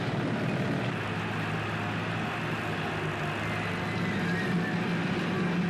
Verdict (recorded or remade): recorded